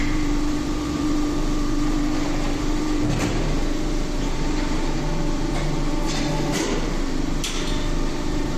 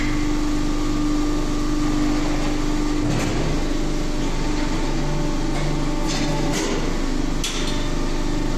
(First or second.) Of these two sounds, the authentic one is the second